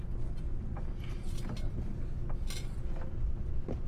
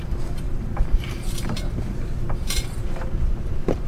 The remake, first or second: second